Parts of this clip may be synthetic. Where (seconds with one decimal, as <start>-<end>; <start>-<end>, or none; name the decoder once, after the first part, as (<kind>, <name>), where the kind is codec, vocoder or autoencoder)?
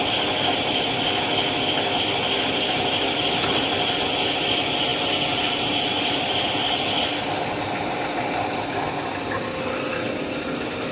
none